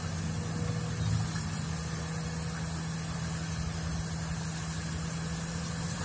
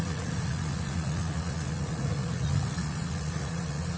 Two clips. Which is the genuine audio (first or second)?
first